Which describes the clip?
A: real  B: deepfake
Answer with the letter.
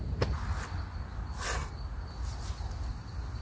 A